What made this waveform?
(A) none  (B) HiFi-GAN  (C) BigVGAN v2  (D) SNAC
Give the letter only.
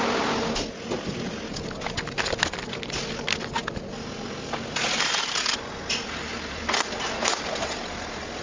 A